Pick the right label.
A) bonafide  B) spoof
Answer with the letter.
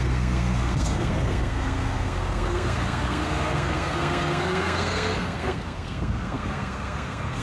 B